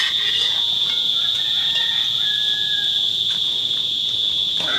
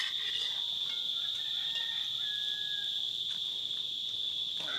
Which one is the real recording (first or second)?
second